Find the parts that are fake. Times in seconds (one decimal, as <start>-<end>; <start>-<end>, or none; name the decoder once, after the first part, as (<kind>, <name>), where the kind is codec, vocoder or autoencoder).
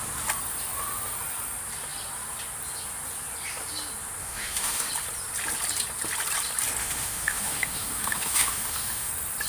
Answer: 4.2-4.9 (autoencoder, DAC-VAE); 6.8-9.1